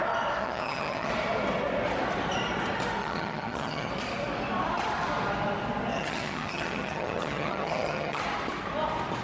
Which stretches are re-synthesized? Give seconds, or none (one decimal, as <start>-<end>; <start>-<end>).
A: 0.4-1.1; 3.0-3.9; 5.9-8.2